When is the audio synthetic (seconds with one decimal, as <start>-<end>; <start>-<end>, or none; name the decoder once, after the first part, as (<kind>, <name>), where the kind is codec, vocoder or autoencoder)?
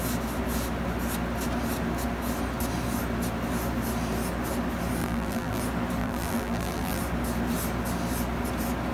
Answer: 5.0-5.6 (vocoder, BigVGAN v2); 6.0-7.0